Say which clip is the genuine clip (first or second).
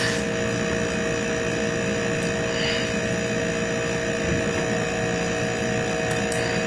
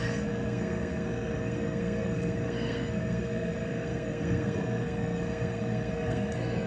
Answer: first